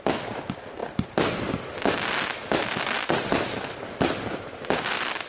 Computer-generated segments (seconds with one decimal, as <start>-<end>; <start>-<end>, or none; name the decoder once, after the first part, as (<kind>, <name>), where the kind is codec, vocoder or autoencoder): none